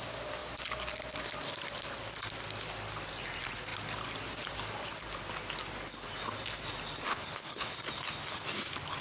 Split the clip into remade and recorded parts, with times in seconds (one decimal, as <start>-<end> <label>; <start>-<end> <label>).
0.0-7.1 recorded; 7.1-7.7 remade; 7.7-9.0 recorded